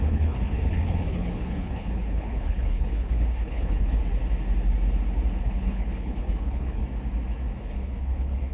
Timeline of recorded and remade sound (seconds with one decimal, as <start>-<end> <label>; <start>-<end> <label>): 0.0-4.0 remade; 4.0-5.4 recorded; 5.4-6.8 remade; 6.8-7.6 recorded; 7.6-8.5 remade